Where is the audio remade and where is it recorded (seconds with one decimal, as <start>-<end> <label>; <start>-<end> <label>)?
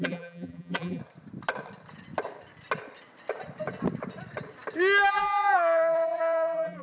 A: 0.0-1.0 remade; 1.0-5.1 recorded; 5.1-6.8 remade